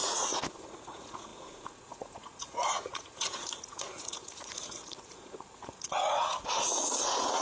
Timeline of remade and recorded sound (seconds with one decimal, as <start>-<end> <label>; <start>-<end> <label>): 0.0-7.4 remade